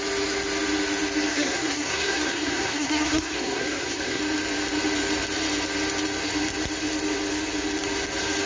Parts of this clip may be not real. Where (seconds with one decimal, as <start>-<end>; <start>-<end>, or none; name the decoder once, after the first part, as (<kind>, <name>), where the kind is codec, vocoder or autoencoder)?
1.3-4.2 (codec, SNAC)